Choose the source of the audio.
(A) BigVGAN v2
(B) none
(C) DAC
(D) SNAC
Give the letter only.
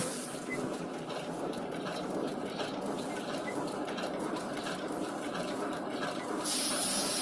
A